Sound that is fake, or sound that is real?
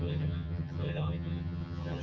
fake